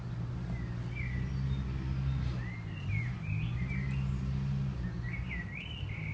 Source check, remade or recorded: recorded